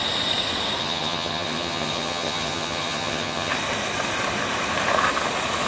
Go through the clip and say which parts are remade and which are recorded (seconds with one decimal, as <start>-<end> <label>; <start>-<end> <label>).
0.0-0.8 recorded; 0.8-3.5 remade; 3.5-5.7 recorded